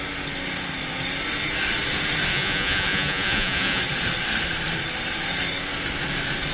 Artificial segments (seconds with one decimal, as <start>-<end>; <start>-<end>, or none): 2.3-3.8